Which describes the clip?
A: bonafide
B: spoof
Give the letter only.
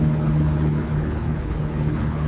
B